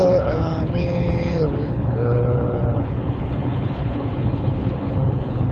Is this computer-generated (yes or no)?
yes